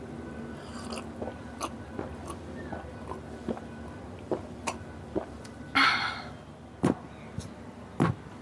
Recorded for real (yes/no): no